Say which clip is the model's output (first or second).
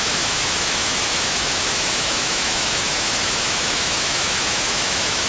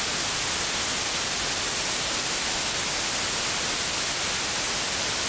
first